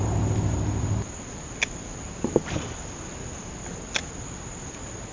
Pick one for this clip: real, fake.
real